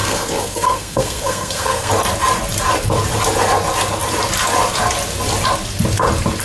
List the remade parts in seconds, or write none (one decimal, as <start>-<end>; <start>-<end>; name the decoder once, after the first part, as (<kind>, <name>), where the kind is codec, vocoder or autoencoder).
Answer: 0.0-1.9 (codec, SNAC)